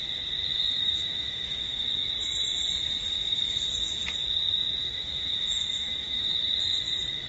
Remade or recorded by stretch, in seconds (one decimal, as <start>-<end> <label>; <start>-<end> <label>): 0.0-0.5 recorded; 0.5-2.1 remade; 2.1-4.8 recorded; 4.8-6.4 remade; 6.4-7.3 recorded